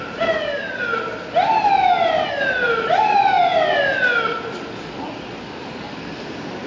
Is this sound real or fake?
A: real